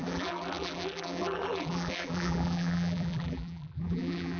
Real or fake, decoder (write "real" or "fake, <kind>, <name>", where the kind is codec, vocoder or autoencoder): fake, vocoder, BigVGAN v2